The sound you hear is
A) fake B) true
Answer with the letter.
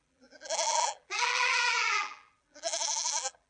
A